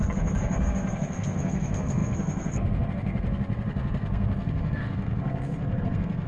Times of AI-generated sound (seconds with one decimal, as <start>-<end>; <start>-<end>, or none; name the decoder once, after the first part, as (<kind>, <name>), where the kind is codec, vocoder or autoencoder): 0.0-6.3 (codec, SNAC)